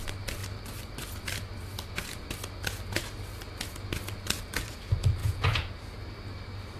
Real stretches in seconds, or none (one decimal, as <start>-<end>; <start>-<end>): 0.0-5.2; 5.7-6.8